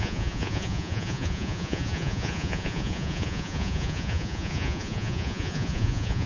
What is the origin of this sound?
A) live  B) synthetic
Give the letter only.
B